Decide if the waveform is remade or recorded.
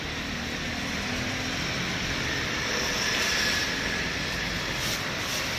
remade